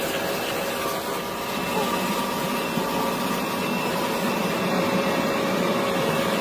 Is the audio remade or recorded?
remade